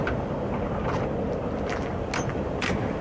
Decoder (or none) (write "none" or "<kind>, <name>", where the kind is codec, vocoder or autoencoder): none